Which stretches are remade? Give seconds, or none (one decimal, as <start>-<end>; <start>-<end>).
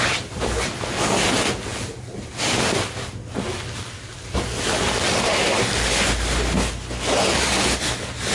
none